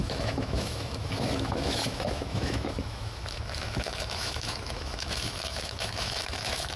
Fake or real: fake